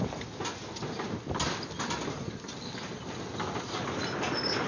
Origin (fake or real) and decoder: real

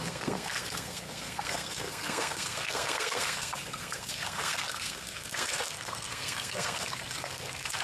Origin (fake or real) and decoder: fake, codec, SNAC